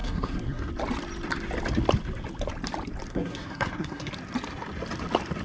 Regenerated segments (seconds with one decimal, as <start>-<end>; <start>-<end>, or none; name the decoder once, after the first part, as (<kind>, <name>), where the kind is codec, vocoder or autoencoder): 0.0-0.7 (codec, SNAC); 3.1-4.1